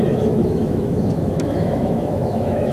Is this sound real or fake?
fake